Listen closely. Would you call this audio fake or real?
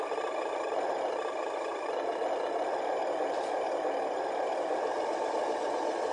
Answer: real